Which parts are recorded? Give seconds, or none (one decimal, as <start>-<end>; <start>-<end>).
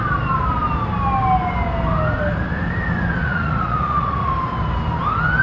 0.0-3.2; 4.3-5.4